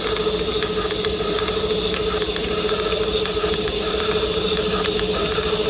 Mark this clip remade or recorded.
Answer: recorded